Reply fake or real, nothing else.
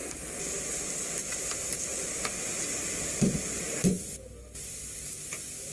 real